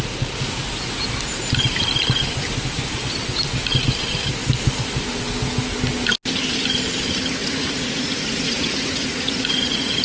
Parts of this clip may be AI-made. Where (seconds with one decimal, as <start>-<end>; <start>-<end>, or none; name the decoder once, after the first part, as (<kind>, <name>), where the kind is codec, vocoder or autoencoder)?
7.4-10.0 (vocoder, Vocos)